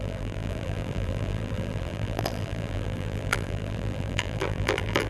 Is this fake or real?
fake